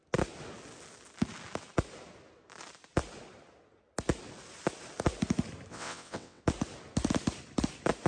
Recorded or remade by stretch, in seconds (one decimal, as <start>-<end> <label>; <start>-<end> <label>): 0.0-5.7 recorded; 5.7-6.4 remade; 6.4-8.1 recorded